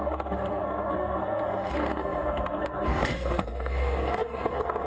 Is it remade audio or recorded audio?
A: remade